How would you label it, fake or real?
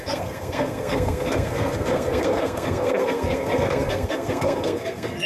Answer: fake